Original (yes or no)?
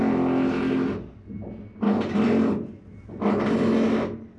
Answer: yes